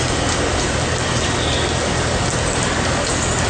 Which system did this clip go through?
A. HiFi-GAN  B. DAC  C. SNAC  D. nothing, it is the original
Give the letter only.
D